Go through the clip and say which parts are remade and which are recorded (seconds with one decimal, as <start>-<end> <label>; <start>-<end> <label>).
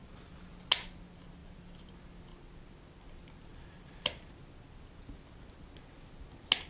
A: 0.0-1.4 recorded; 1.4-1.9 remade; 1.9-3.5 recorded; 3.5-4.4 remade; 4.4-6.7 recorded